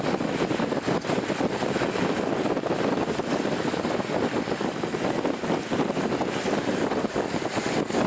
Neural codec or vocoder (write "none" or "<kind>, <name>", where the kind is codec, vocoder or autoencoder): none